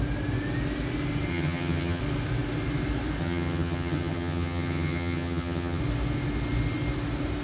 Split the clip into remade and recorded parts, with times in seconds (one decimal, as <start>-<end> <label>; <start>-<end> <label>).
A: 0.0-1.3 recorded; 1.3-2.0 remade; 2.0-3.2 recorded; 3.2-5.8 remade; 5.8-7.4 recorded